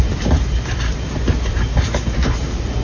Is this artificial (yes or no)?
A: no